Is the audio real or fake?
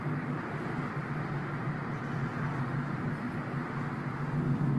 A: real